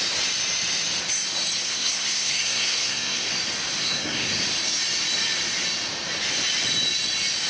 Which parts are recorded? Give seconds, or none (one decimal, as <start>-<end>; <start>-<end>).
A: 0.0-1.6; 3.3-3.8; 4.3-7.5